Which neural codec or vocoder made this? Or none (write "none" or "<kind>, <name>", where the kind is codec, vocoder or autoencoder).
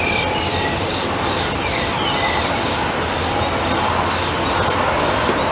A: none